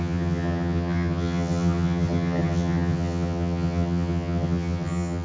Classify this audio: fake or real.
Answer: fake